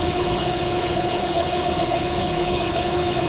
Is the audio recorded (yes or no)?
no